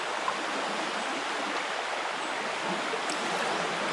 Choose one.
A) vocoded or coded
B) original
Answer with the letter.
B